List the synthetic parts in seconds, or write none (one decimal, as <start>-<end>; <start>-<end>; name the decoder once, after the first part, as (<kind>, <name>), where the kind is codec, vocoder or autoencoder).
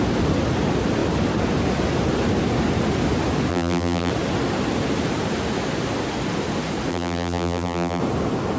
3.5-4.1 (vocoder, BigVGAN v2); 6.9-8.0